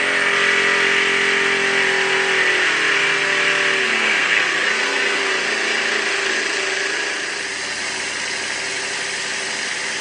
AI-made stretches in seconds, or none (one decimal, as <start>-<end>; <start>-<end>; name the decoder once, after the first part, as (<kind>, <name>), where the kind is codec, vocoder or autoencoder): 3.8-5.2 (codec, SNAC)